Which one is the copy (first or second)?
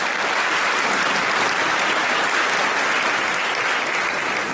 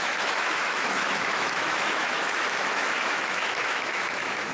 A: second